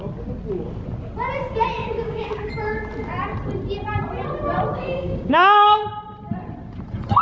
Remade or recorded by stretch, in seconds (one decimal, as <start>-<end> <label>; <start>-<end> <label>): 0.0-1.8 recorded; 1.8-2.5 remade; 2.5-4.7 recorded; 4.7-5.8 remade; 5.8-7.2 recorded